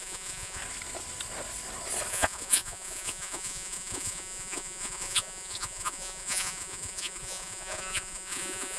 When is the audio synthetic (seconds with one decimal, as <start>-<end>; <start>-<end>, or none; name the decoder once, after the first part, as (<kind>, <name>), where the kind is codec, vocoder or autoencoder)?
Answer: 0.0-0.6 (vocoder, Vocos); 2.1-8.8